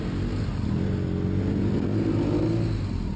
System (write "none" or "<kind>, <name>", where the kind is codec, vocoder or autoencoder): none